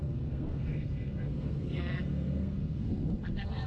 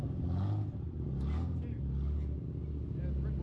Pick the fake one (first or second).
first